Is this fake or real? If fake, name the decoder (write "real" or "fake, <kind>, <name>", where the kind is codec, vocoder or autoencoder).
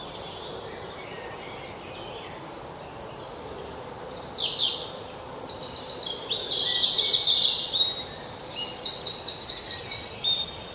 real